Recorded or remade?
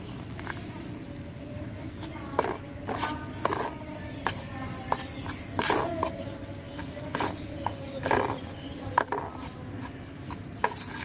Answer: recorded